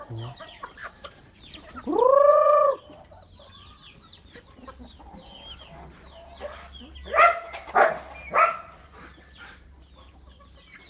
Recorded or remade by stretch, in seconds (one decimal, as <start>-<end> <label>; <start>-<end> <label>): 0.0-0.8 recorded; 0.8-1.4 remade; 1.4-2.3 recorded; 2.3-2.8 remade; 2.8-10.9 recorded